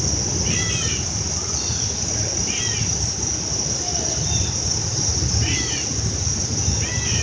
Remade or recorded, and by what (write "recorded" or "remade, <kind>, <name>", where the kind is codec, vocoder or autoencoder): recorded